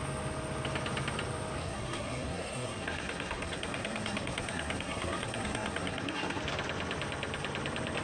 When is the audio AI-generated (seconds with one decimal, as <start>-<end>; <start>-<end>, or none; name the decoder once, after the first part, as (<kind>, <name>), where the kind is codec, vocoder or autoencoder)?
1.6-6.4 (codec, SNAC)